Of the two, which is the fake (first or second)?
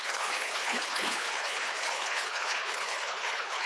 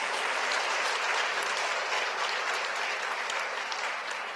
first